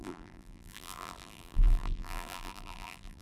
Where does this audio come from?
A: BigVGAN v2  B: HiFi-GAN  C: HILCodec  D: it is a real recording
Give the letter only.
A